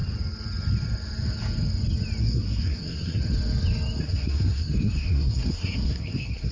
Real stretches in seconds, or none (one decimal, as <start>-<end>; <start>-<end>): 0.0-2.2; 3.2-4.0